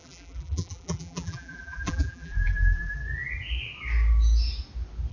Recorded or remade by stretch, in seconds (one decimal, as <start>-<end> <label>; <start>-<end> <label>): 0.0-3.0 remade; 3.0-5.1 recorded